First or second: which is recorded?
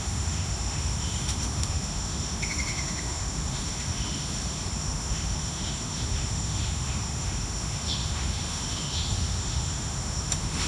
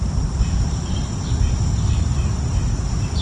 second